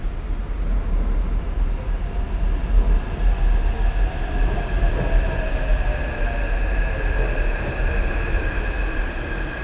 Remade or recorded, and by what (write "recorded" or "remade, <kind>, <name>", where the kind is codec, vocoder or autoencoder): recorded